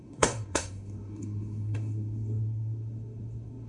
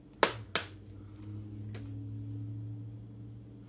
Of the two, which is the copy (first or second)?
first